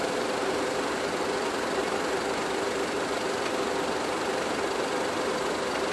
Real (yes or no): yes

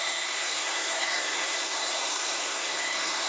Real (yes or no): no